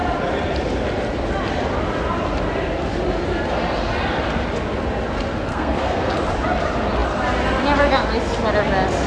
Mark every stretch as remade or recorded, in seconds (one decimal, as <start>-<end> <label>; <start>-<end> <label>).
0.0-5.5 recorded; 5.5-6.1 remade; 6.1-9.1 recorded